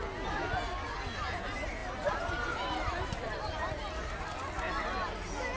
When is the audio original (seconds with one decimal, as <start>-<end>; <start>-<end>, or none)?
0.0-5.6